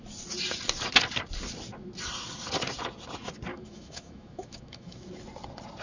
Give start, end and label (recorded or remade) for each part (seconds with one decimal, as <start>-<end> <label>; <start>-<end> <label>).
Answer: 0.0-3.5 recorded; 3.5-5.1 remade; 5.1-5.8 recorded